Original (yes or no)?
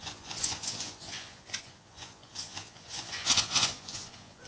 no